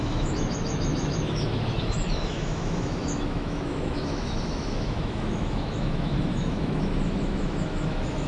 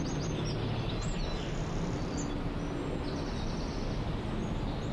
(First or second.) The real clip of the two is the second